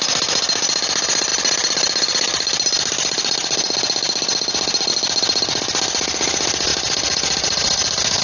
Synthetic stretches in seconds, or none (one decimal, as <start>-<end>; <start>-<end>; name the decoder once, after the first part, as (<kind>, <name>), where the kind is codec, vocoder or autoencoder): none